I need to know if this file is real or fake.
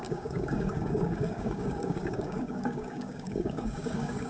fake